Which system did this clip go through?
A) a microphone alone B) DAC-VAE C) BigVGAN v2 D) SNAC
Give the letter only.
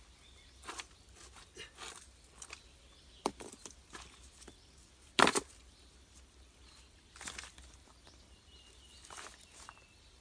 A